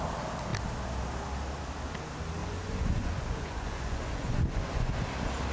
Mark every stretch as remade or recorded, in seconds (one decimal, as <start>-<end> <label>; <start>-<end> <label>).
0.0-2.4 recorded; 2.4-4.9 remade; 4.9-5.5 recorded